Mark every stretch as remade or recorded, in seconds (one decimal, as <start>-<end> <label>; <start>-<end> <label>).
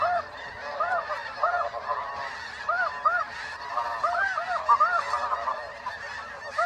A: 0.0-1.2 recorded; 1.2-3.6 remade; 3.6-5.5 recorded; 5.5-6.7 remade